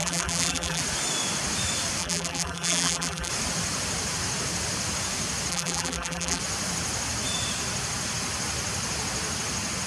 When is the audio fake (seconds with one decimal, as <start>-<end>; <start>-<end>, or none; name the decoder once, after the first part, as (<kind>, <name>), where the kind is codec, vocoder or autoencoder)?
0.0-0.8 (vocoder, BigVGAN v2); 2.0-3.3; 5.5-6.4